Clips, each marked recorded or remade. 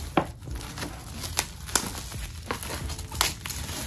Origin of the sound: recorded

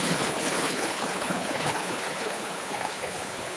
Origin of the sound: remade